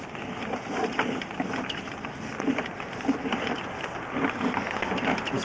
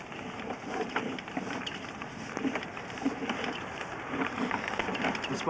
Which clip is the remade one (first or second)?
second